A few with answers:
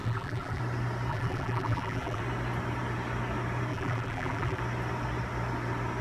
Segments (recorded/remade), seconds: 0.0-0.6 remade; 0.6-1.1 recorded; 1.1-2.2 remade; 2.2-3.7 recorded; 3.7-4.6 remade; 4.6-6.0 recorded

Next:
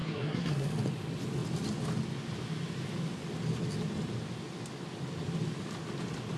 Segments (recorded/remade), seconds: 0.0-0.7 remade; 0.7-6.4 recorded

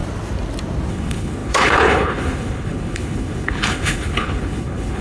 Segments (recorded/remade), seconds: 0.0-0.9 recorded; 0.9-5.0 remade

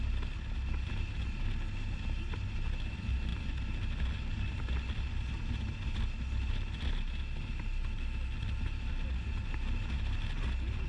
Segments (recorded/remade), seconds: 0.0-10.9 recorded

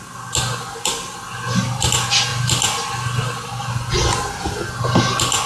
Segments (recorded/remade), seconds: 0.0-5.5 recorded

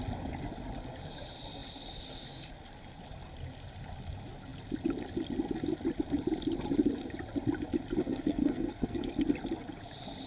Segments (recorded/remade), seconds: 0.0-8.0 recorded; 8.0-9.1 remade; 9.1-10.3 recorded

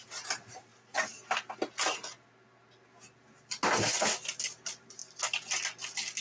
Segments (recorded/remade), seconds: 0.0-0.7 remade; 0.7-4.4 recorded; 4.4-5.0 remade; 5.0-6.2 recorded